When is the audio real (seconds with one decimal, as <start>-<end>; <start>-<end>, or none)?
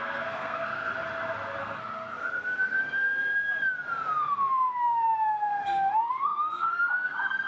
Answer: 0.9-1.6; 3.5-4.2